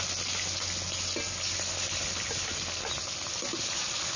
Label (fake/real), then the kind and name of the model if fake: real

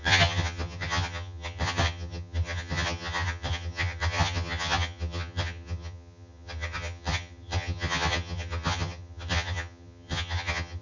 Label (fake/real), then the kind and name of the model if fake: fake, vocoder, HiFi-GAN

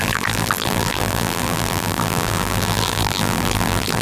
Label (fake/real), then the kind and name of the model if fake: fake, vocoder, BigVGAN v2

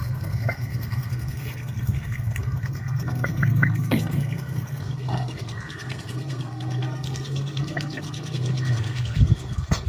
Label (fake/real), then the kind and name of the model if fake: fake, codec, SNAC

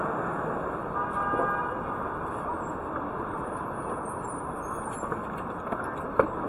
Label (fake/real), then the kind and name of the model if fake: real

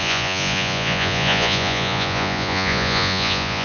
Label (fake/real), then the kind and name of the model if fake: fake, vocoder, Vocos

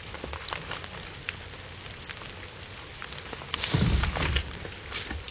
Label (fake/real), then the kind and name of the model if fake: real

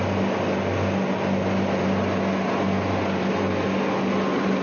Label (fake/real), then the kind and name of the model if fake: real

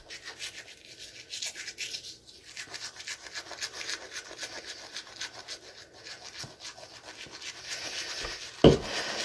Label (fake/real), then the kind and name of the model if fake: real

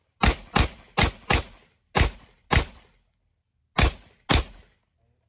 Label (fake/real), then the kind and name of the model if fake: real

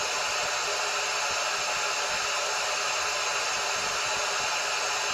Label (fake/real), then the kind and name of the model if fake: real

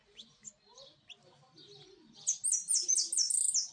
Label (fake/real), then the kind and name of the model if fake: real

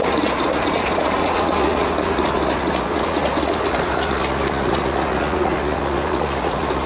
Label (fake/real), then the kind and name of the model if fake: fake, vocoder, Vocos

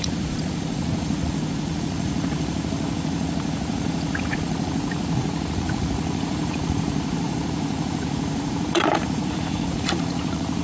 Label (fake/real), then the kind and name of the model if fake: fake, vocoder, Vocos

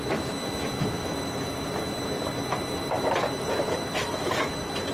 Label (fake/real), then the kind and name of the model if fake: fake, autoencoder, DAC-VAE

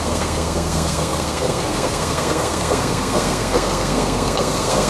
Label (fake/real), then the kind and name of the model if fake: fake, codec, SNAC